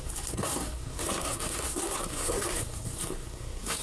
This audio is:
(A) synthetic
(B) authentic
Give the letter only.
A